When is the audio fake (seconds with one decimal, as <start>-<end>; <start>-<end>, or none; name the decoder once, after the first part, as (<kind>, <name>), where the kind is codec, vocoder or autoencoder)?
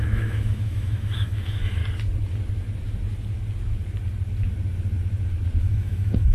0.0-1.8 (autoencoder, DAC-VAE); 5.6-6.3